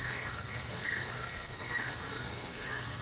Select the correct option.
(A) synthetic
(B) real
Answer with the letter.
A